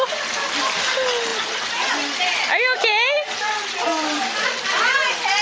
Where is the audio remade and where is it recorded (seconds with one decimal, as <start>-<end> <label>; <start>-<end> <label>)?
0.0-5.4 recorded